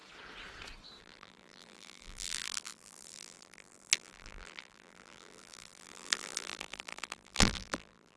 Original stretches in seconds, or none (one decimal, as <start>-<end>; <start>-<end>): 0.0-1.0

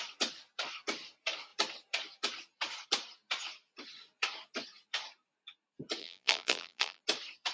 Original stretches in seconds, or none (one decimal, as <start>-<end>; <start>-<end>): 0.0-6.0; 7.0-7.5